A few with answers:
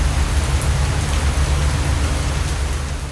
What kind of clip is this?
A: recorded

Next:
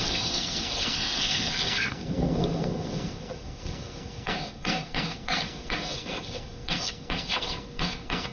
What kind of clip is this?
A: remade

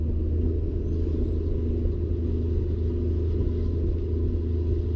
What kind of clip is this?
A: recorded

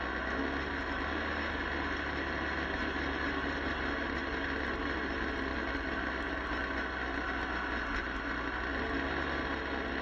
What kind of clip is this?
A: recorded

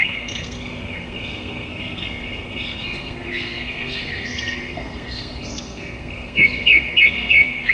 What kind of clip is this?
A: remade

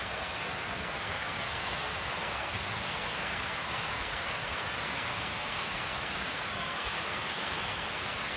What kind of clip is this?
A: remade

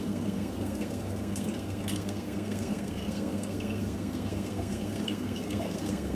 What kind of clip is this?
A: remade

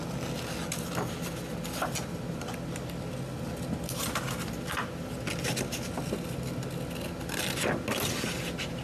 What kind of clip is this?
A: recorded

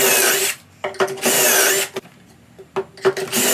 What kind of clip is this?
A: recorded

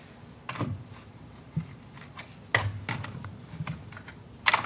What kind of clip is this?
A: recorded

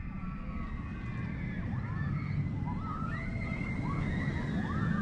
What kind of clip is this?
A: recorded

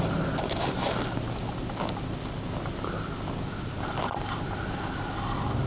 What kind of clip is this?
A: recorded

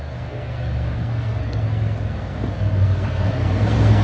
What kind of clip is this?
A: remade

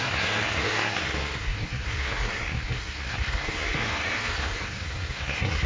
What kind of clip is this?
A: remade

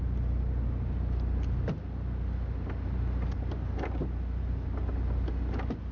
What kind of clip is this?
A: recorded